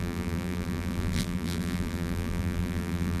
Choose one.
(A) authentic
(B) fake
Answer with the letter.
B